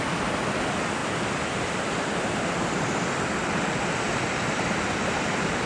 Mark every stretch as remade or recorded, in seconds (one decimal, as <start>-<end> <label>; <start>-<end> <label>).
0.0-1.0 recorded; 1.0-3.4 remade; 3.4-5.7 recorded